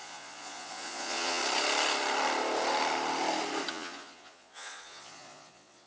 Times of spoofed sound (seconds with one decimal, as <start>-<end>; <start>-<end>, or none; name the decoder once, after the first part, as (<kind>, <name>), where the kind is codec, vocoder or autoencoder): 0.0-1.4 (vocoder, Vocos); 3.7-5.9